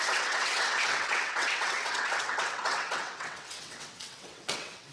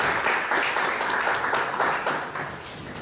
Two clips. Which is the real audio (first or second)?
second